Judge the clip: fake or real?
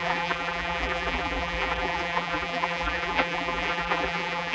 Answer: fake